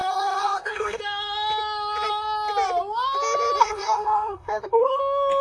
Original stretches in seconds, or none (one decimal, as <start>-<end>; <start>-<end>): 1.0-3.6; 5.0-5.4